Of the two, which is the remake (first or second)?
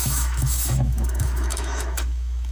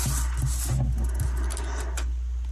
first